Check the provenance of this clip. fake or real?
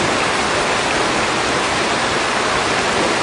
real